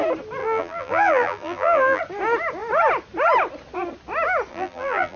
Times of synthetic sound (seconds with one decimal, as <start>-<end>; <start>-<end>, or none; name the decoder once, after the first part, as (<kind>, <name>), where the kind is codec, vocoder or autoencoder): 0.4-2.0 (vocoder, BigVGAN v2); 4.5-5.2

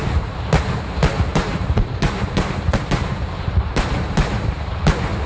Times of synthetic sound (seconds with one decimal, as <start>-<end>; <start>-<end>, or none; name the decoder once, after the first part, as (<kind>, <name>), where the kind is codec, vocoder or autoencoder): 1.3-4.5 (vocoder, BigVGAN v2)